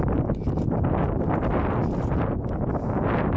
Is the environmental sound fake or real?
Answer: real